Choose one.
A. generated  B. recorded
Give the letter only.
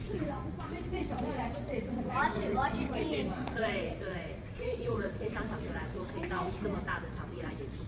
A